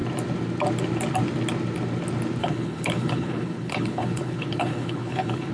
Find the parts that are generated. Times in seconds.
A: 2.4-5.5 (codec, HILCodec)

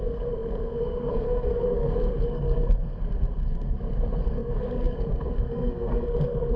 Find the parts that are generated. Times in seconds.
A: 0.0-6.6 (codec, SNAC)

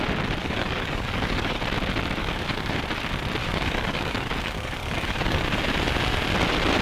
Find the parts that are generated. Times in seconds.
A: 0.4-1.6 (codec, DAC); 2.2-2.8; 3.4-5.4

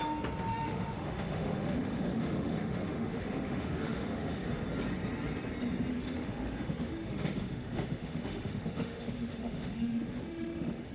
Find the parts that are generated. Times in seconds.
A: 0.5-4.6 (autoencoder, DAC-VAE); 5.9-10.9

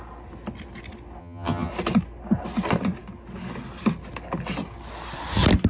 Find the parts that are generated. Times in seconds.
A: 1.2-1.7 (vocoder, HiFi-GAN)

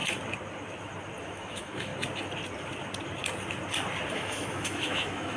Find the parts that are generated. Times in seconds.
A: 1.2-1.9 (autoencoder, DAC-VAE); 4.1-5.4